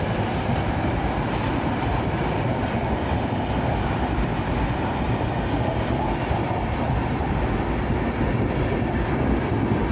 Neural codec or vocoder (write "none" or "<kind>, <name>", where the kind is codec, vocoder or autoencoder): none